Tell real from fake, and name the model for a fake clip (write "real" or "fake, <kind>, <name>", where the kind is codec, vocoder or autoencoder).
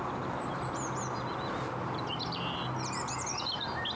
real